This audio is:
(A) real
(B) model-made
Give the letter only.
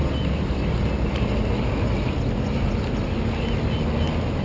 A